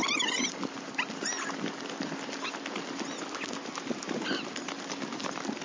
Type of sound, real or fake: real